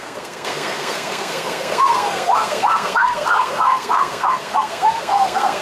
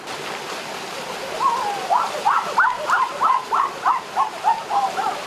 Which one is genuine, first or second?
second